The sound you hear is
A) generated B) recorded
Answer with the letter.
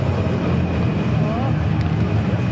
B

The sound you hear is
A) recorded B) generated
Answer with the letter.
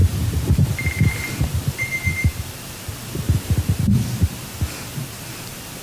B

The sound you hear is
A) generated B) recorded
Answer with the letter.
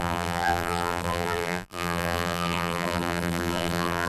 A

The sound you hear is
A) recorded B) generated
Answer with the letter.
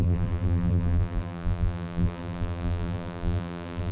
B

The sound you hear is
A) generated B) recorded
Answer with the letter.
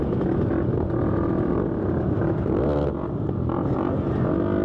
B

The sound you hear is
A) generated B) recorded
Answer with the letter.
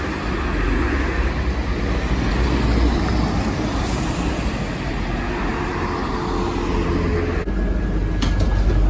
B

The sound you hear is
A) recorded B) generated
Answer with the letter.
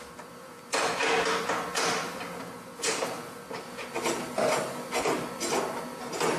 A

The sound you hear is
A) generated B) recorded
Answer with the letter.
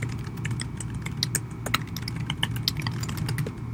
B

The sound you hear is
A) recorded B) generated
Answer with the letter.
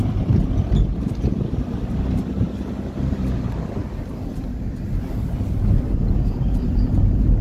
A